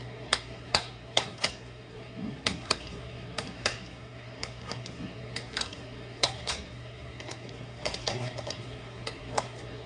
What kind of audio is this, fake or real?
fake